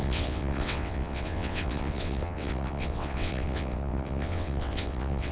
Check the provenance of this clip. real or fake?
fake